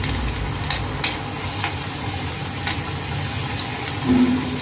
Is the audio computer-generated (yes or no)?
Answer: no